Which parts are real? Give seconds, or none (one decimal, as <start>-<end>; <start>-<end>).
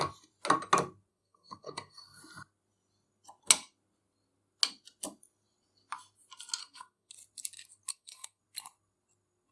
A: 0.0-1.1; 2.2-6.6; 7.1-7.9; 8.4-9.5